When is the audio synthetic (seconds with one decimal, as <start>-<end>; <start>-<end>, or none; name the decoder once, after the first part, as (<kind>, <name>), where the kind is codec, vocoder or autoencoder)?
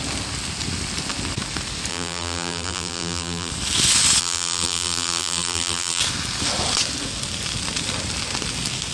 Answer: 1.9-3.5 (vocoder, BigVGAN v2); 4.2-6.0